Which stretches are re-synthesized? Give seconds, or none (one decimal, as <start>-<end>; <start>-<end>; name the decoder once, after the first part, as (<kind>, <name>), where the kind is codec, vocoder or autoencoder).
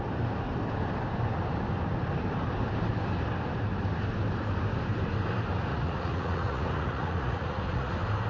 5.7-7.9 (vocoder, Vocos)